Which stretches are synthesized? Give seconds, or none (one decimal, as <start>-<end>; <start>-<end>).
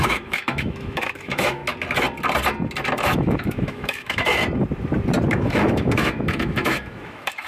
0.0-1.6; 3.0-4.3; 5.3-7.5